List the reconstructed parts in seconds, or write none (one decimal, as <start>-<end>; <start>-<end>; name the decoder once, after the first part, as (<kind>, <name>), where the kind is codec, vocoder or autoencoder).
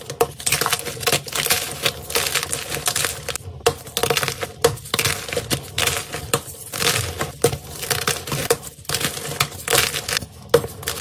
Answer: none